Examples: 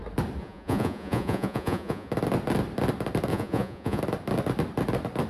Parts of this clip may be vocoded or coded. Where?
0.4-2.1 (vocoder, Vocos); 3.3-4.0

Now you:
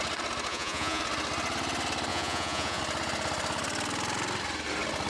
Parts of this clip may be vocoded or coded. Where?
0.5-1.0 (vocoder, Vocos); 2.1-2.8

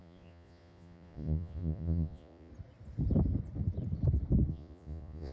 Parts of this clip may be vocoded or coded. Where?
0.0-2.5 (vocoder, Vocos); 4.5-5.3

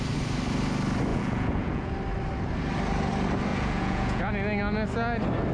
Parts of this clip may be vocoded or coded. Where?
1.1-1.9 (vocoder, Vocos); 3.5-4.3

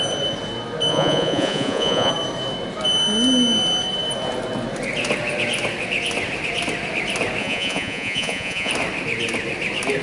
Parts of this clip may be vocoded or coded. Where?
0.9-2.1 (vocoder, Vocos); 7.4-8.7

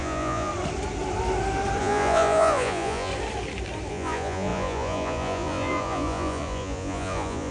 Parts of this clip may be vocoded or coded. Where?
0.0-0.5 (vocoder, Vocos); 1.8-3.1; 3.9-7.5